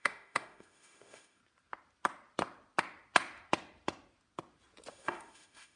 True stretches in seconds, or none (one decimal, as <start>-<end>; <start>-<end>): 1.4-4.9